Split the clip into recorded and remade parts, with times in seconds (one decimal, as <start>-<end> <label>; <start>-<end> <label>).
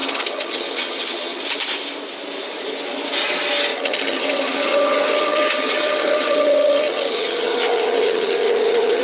0.0-1.4 remade; 1.4-3.7 recorded; 3.7-9.0 remade